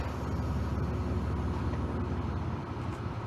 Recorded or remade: recorded